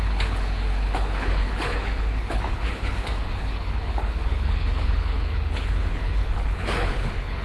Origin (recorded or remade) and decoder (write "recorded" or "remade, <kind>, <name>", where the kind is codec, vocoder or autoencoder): remade, codec, HILCodec